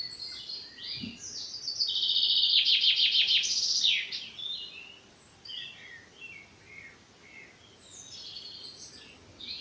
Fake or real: real